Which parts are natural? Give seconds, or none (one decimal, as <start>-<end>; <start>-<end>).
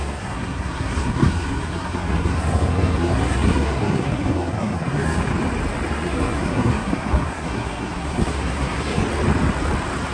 5.3-5.9; 9.0-10.1